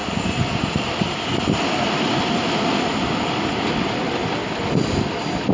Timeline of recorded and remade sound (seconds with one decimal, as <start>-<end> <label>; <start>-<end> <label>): 0.0-5.5 recorded